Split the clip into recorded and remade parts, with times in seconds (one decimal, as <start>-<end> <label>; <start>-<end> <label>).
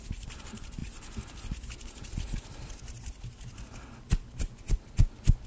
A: 0.0-5.5 recorded